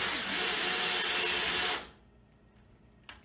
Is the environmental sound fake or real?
real